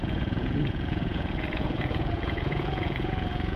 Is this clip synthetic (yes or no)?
yes